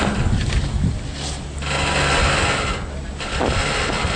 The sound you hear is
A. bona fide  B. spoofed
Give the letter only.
A